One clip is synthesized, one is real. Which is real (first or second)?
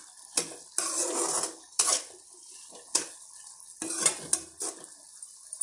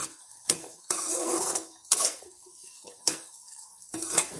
first